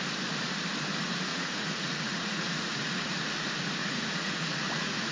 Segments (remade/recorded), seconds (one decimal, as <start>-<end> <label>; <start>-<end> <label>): 0.0-1.3 recorded; 1.3-3.2 remade; 3.2-3.8 recorded; 3.8-5.1 remade